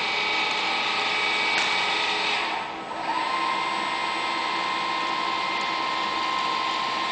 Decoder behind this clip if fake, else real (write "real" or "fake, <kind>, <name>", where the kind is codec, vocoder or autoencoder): real